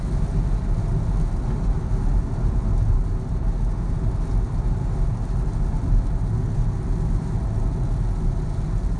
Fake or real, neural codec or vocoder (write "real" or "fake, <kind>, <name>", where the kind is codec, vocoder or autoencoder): real